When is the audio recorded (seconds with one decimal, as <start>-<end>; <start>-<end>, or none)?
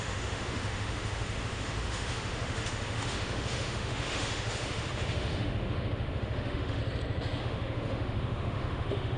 6.8-7.4